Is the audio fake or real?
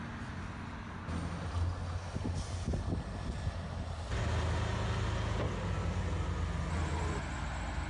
real